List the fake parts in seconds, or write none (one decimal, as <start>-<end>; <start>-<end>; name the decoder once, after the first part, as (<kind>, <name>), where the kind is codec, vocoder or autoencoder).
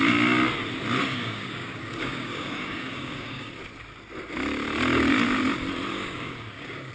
1.0-3.5 (codec, DAC); 5.9-6.9